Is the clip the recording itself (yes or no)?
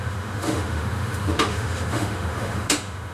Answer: no